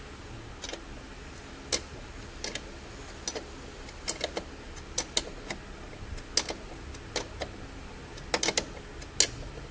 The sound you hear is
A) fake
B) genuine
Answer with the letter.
B